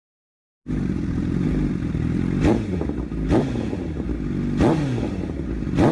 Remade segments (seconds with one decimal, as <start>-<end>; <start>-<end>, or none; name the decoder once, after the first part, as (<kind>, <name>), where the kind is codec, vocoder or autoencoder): 0.6-1.7 (vocoder, BigVGAN v2)